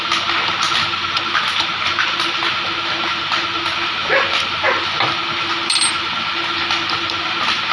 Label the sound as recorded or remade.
recorded